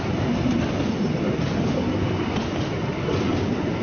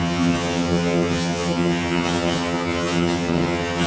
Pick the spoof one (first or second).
second